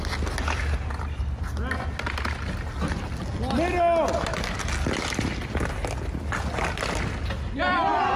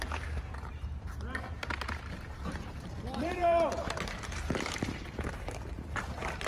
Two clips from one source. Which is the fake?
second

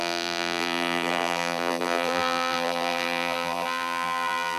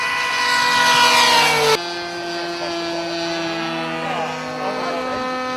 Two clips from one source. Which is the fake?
first